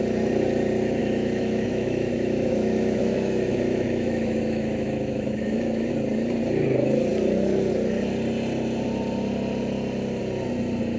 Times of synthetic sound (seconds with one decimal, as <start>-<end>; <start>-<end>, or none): 1.0-5.9